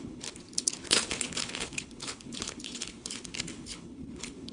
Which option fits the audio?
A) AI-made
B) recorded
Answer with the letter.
A